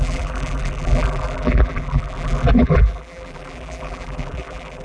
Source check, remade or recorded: remade